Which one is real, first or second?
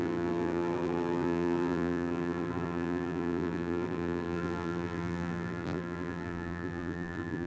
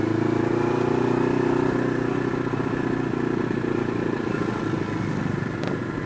second